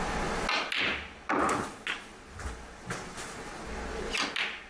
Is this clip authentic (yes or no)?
yes